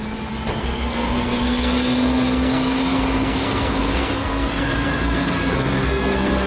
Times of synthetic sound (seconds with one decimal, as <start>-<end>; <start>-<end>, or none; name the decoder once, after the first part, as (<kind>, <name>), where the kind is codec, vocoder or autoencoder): 0.6-6.5 (codec, SNAC)

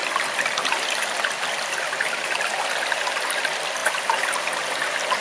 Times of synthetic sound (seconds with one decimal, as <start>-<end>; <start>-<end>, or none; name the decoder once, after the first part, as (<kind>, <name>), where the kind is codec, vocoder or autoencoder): none

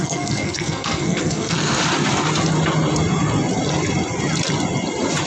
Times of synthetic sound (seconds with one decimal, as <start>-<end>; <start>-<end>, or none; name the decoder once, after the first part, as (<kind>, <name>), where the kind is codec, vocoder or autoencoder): 0.0-1.8 (codec, SNAC)

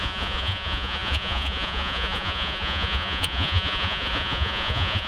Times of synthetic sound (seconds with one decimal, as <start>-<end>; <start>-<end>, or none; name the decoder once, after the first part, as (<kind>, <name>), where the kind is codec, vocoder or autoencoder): 0.0-5.1 (vocoder, Vocos)